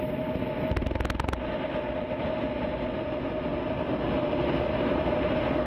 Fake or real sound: real